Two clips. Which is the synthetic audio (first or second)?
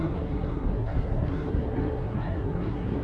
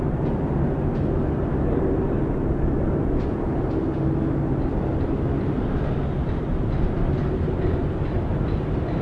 first